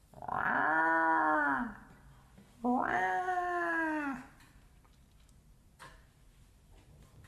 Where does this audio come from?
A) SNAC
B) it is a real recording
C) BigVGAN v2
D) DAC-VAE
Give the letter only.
B